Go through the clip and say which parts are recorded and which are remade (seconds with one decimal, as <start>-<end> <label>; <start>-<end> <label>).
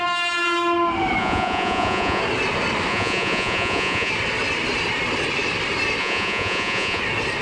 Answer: 0.0-1.2 recorded; 1.2-2.2 remade; 2.2-2.9 recorded; 2.9-4.1 remade; 4.1-6.0 recorded; 6.0-7.0 remade; 7.0-7.4 recorded